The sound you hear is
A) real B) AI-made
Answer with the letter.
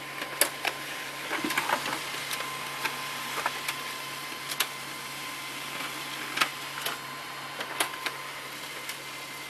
A